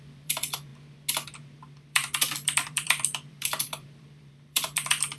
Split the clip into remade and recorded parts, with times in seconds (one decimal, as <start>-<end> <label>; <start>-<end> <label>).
0.0-0.7 remade; 0.7-1.6 recorded; 1.6-5.2 remade